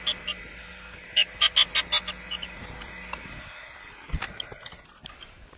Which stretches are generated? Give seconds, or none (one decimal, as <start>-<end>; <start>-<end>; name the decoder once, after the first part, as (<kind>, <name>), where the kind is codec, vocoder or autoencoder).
none